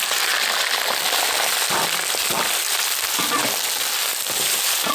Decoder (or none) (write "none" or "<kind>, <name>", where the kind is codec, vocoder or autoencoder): none